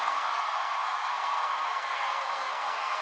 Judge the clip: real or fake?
fake